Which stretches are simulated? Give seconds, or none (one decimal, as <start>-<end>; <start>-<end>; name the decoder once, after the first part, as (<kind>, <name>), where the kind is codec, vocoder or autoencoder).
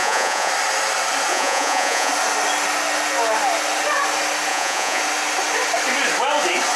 0.0-0.5 (vocoder, Vocos); 1.3-2.1; 4.5-5.0